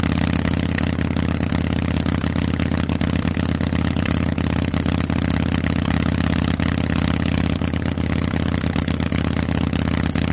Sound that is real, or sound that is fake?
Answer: real